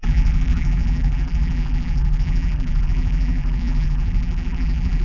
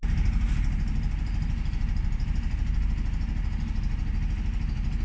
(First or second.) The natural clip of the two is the second